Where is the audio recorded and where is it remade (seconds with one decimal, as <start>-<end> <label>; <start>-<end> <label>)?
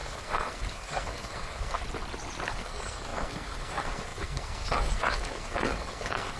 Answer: 0.0-1.8 remade; 1.8-2.5 recorded; 2.5-6.4 remade